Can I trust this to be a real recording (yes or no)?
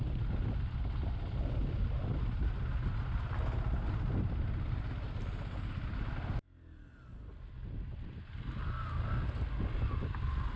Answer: yes